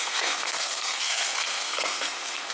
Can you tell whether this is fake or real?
fake